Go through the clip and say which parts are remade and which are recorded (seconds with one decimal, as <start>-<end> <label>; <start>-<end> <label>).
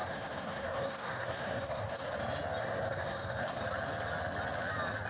0.0-2.1 remade; 2.1-2.6 recorded; 2.6-3.6 remade; 3.6-5.1 recorded